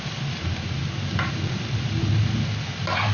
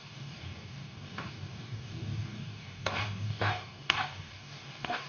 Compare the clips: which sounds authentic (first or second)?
first